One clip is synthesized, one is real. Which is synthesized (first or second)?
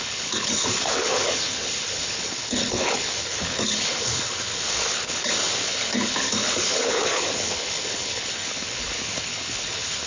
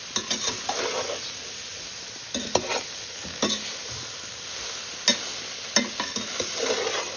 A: first